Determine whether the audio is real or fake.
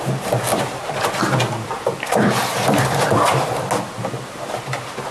real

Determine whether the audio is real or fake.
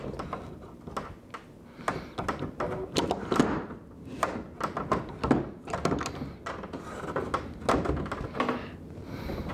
real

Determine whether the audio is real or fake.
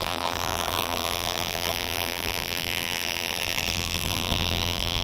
fake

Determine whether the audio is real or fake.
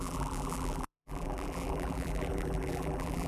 fake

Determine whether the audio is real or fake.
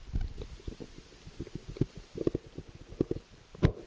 real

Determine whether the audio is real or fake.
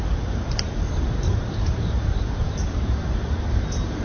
fake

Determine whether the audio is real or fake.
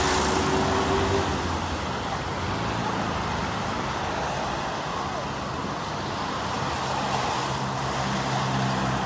real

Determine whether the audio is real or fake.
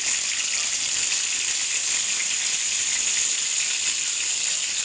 real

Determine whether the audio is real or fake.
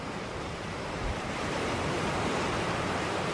fake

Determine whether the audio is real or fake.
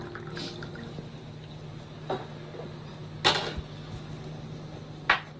real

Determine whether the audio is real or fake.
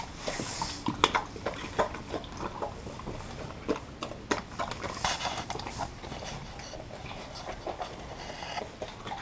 real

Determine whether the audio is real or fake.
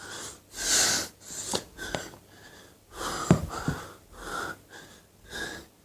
real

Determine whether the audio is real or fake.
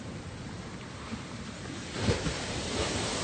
fake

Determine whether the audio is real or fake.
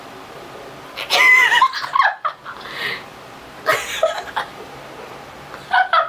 real